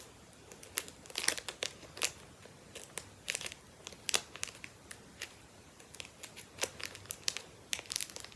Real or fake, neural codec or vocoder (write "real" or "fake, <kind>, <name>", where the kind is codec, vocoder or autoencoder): real